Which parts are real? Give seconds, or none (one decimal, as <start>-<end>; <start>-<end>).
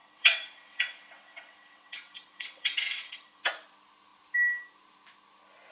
3.4-5.7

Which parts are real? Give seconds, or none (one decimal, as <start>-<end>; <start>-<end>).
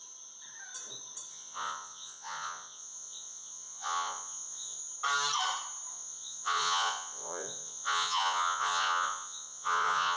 0.0-1.3; 4.8-5.9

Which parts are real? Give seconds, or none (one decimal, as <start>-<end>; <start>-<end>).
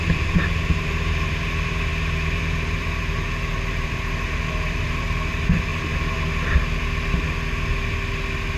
5.7-8.6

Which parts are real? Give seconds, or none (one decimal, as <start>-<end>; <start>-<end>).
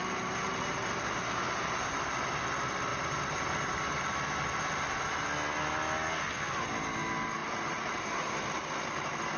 0.0-2.9; 3.5-7.4; 8.7-9.4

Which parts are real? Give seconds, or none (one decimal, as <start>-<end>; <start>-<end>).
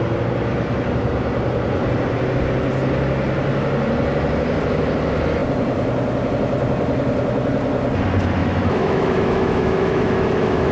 0.0-8.4